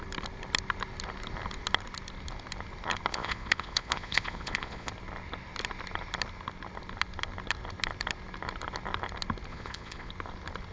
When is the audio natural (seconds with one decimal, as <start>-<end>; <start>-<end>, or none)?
0.0-3.1; 4.9-9.5; 10.1-10.7

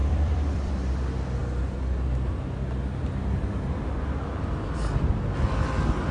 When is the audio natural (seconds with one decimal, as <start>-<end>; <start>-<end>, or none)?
0.7-6.1

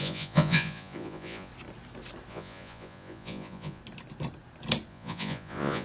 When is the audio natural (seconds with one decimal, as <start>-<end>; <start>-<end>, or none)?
1.5-2.3; 3.8-4.9

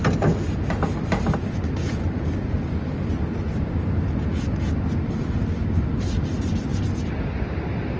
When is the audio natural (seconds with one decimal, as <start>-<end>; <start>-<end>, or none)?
0.0-8.0

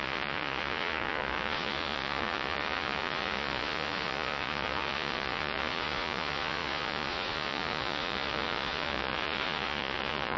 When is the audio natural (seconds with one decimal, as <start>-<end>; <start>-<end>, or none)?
none